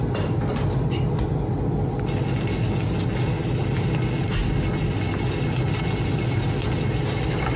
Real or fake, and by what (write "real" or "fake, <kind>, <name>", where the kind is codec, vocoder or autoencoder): real